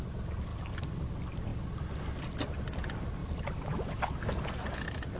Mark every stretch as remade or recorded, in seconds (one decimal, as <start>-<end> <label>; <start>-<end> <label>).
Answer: 0.0-5.2 recorded